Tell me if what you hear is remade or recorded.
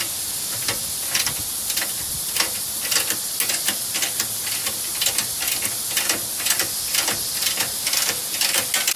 recorded